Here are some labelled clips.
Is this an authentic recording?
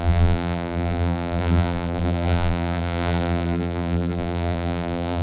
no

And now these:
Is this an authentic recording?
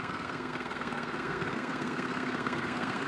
no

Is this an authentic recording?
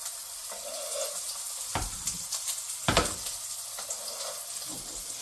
yes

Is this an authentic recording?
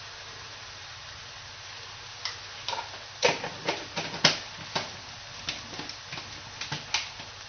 yes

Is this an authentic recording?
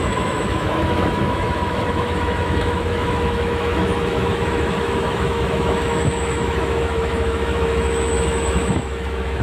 no